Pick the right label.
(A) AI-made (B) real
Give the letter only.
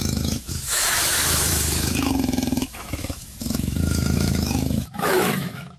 A